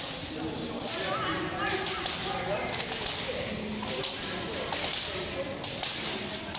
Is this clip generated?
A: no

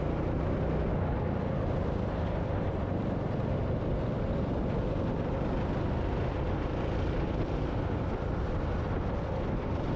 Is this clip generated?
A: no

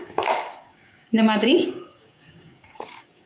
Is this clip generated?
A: yes